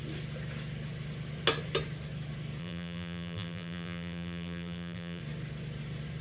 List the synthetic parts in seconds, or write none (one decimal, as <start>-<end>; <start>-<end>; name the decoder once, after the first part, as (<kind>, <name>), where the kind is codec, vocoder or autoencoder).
2.6-5.2 (vocoder, BigVGAN v2)

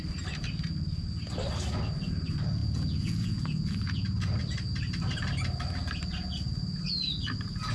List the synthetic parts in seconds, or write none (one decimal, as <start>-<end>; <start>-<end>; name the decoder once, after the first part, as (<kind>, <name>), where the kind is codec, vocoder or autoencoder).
2.6-4.4 (vocoder, Vocos)

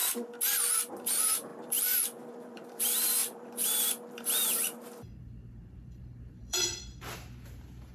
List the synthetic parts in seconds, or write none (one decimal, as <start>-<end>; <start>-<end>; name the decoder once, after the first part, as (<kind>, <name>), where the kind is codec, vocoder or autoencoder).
0.9-7.9 (vocoder, BigVGAN v2)

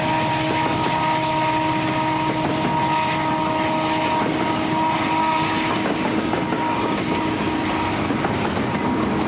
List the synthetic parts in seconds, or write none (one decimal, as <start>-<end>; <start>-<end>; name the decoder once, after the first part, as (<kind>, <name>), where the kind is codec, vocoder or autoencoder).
5.2-7.0 (codec, DAC)

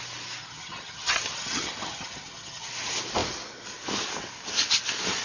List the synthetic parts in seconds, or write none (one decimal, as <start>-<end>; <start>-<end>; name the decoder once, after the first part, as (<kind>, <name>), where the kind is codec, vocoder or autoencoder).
0.4-2.7 (vocoder, HiFi-GAN)